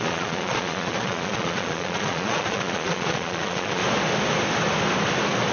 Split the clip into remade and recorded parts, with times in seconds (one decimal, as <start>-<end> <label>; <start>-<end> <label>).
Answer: 0.0-3.8 remade; 3.8-5.5 recorded